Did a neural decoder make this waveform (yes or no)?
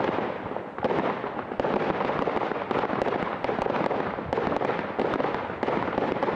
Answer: no